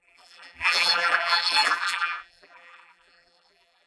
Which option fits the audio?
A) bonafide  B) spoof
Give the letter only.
B